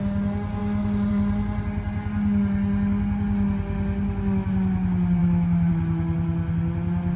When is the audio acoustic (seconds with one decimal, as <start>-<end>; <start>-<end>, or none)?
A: 0.0-5.2; 5.7-7.2